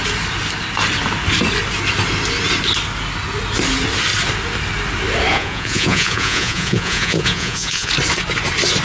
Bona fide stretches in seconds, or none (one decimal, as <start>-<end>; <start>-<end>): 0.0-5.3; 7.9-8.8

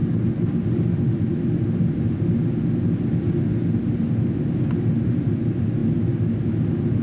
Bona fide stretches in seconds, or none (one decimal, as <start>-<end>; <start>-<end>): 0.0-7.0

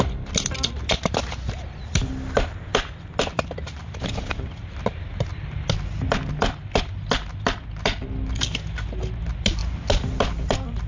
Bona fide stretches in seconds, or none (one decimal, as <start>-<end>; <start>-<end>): 0.0-10.9

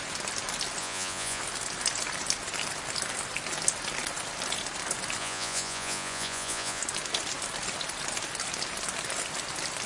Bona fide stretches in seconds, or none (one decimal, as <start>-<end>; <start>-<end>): 0.0-0.8; 1.4-5.2; 6.8-9.9

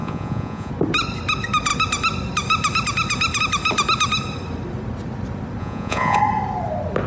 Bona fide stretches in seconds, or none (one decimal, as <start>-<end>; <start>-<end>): 0.7-5.6; 6.2-7.1

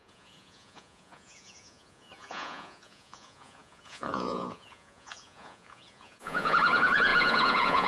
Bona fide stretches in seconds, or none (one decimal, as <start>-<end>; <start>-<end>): none